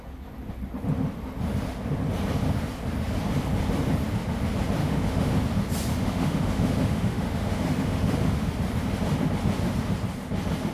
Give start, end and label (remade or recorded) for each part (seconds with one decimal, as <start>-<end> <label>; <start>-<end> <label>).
0.0-4.8 recorded; 4.8-5.3 remade; 5.3-5.9 recorded; 5.9-8.5 remade; 8.5-10.7 recorded